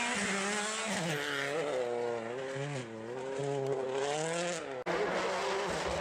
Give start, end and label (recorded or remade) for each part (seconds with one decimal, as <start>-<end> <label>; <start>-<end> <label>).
0.0-6.0 recorded